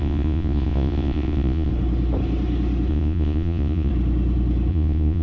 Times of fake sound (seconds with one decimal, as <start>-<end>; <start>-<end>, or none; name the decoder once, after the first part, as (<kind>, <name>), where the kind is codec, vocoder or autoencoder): 0.0-1.7 (vocoder, Vocos); 2.9-3.9; 4.7-5.2